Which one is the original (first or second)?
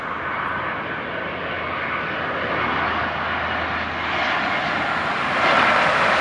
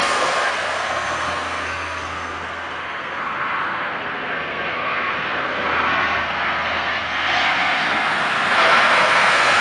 first